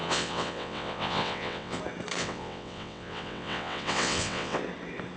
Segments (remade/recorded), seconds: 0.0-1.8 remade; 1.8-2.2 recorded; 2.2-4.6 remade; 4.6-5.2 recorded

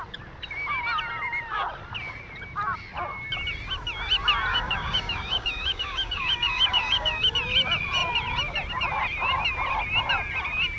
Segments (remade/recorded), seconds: 0.0-4.5 recorded; 4.5-7.3 remade; 7.3-10.8 recorded

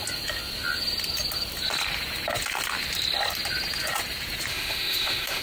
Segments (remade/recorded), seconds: 0.0-4.5 recorded; 4.5-5.4 remade